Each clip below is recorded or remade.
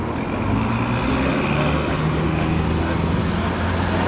recorded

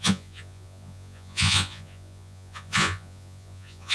remade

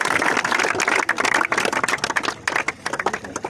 recorded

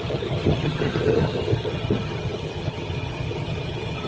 remade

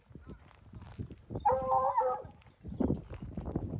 recorded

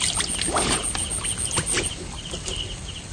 recorded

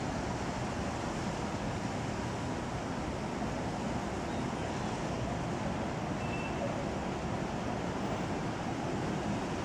recorded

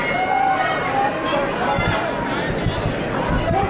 recorded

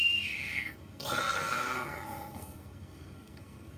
remade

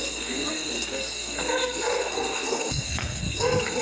remade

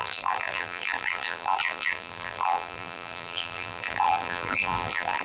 remade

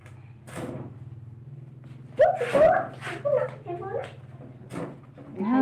recorded